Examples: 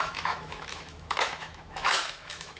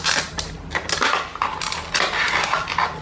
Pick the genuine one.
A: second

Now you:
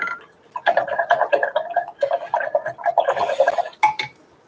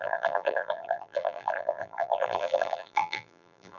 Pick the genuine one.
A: first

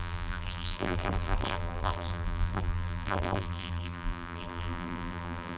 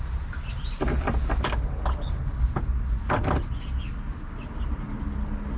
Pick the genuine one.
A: second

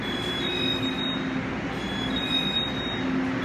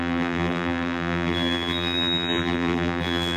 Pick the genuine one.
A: first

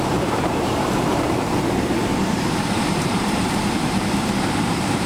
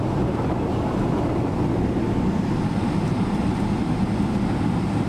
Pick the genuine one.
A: second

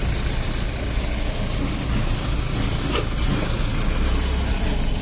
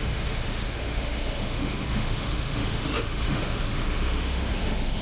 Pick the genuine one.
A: first